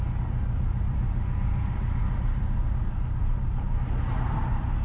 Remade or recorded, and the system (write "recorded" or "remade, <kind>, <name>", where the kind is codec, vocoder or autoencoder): remade, vocoder, BigVGAN v2